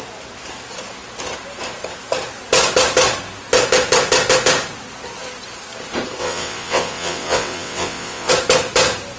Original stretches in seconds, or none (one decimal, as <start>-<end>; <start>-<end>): 0.0-6.2; 8.3-9.2